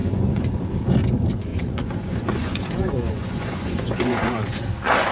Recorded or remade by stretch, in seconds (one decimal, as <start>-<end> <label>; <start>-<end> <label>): 0.0-0.6 remade; 0.6-1.5 recorded; 1.5-4.6 remade; 4.6-5.1 recorded